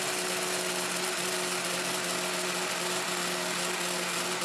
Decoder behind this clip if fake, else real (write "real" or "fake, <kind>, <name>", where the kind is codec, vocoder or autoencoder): real